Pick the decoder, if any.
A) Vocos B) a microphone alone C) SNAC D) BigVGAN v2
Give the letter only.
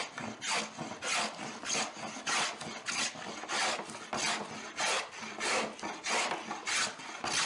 B